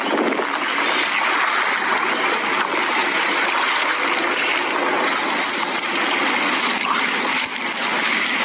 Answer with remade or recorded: recorded